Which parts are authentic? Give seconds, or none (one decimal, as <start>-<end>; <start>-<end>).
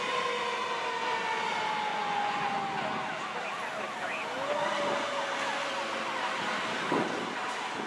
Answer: 0.0-1.9; 2.5-7.9